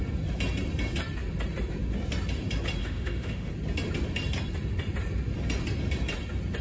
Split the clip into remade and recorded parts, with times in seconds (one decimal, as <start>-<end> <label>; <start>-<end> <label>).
0.0-2.8 recorded; 2.8-3.5 remade; 3.5-6.6 recorded